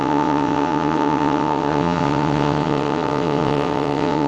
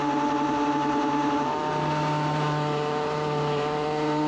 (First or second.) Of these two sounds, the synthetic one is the first